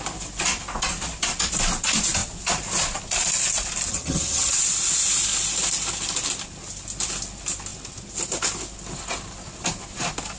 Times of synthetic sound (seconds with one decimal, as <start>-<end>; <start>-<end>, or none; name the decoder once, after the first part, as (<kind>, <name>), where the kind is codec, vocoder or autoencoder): 3.9-4.5 (vocoder, HiFi-GAN)